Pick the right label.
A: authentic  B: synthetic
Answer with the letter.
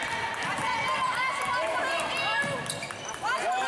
A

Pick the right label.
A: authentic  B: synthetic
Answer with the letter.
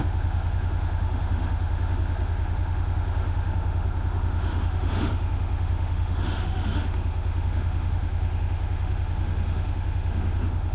B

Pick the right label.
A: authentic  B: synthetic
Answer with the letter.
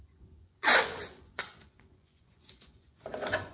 B